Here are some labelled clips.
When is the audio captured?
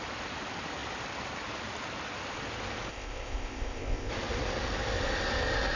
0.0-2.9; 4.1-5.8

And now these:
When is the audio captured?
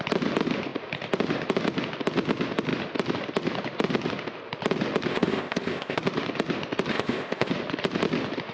0.0-5.1; 6.0-6.9; 7.5-8.5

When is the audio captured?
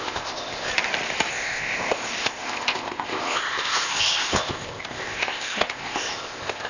0.7-1.3